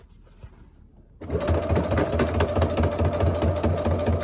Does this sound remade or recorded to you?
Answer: recorded